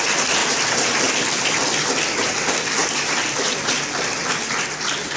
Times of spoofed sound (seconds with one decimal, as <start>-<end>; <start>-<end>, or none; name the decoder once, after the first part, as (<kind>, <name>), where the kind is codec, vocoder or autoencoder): 0.4-0.9 (vocoder, BigVGAN v2); 2.8-3.8